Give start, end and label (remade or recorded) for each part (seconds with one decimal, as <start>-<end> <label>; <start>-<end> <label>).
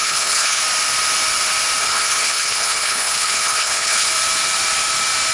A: 0.0-0.6 remade; 0.6-1.8 recorded; 1.8-4.1 remade; 4.1-5.3 recorded